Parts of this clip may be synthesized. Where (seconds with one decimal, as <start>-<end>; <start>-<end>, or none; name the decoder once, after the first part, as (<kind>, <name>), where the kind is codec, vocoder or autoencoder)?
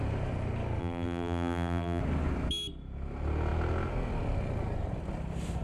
0.8-2.0 (vocoder, BigVGAN v2)